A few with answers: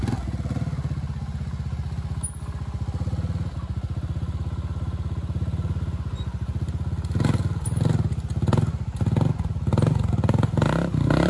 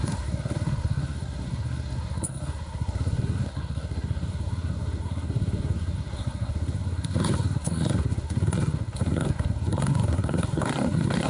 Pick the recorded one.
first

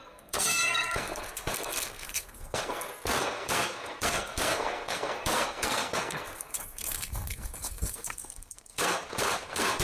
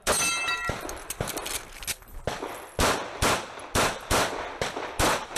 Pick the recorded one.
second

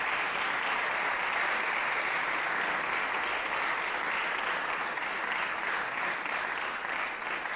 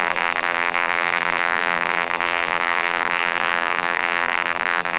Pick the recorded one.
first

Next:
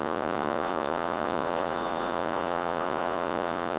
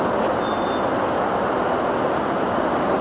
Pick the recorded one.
second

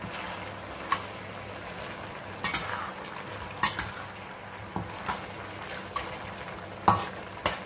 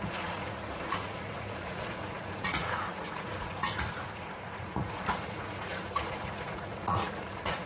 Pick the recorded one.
first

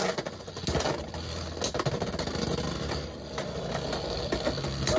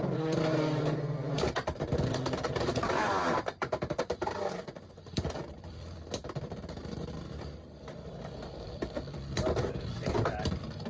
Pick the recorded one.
first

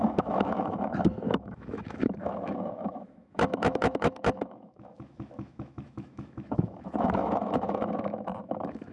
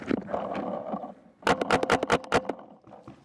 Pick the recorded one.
second